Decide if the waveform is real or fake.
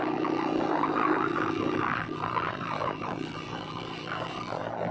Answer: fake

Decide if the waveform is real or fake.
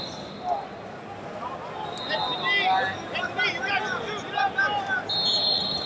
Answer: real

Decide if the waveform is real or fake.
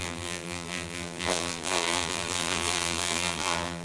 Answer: fake